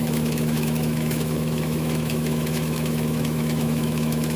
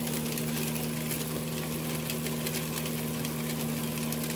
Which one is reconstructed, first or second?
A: first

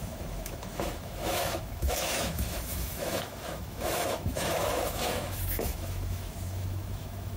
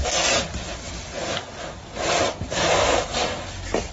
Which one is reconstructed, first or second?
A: first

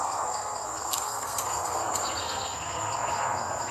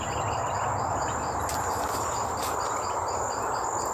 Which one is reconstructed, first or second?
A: first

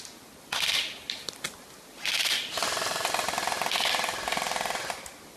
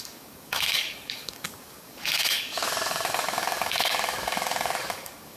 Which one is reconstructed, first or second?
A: second